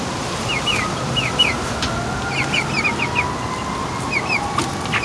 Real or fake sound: real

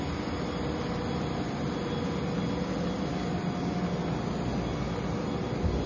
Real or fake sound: real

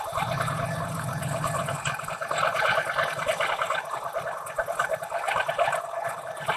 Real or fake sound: real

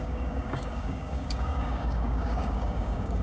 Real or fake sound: fake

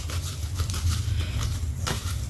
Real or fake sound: real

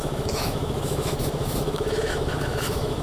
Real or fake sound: fake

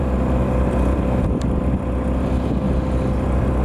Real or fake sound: real